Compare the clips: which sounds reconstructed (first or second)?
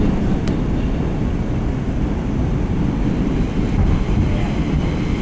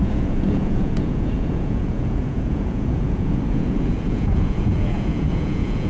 second